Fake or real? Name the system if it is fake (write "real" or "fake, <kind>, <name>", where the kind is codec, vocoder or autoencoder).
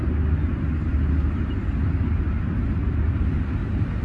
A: real